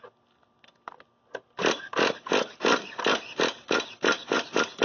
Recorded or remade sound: recorded